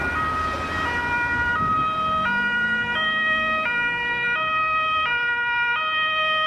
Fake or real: real